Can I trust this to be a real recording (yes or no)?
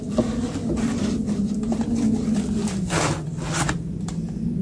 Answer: yes